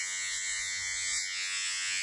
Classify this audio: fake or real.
fake